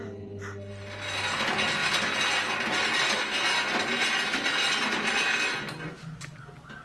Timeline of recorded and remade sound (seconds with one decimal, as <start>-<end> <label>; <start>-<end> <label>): 0.0-6.8 recorded